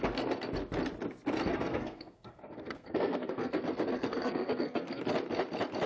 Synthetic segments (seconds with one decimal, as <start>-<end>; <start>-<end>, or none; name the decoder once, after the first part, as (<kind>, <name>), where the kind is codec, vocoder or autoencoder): 1.5-5.0 (codec, SNAC)